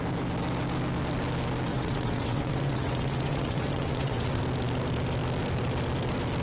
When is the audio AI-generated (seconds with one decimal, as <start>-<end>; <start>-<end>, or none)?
1.7-4.4